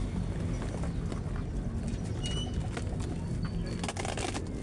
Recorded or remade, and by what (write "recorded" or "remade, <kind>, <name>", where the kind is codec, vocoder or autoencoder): recorded